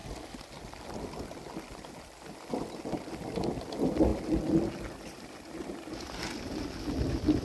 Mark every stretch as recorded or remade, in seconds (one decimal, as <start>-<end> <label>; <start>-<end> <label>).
0.0-7.4 recorded